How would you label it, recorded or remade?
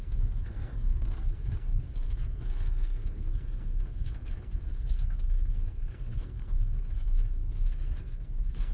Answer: remade